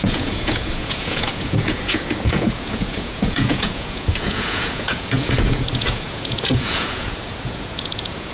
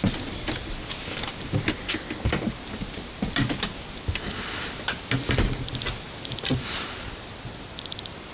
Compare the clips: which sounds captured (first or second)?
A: second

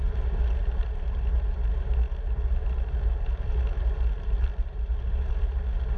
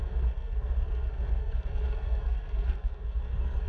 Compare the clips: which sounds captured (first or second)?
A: first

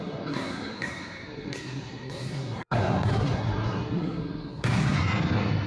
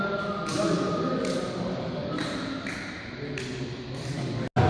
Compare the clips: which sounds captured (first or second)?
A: second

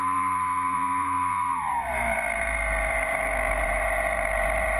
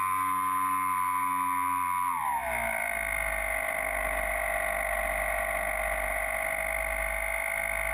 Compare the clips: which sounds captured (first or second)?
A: second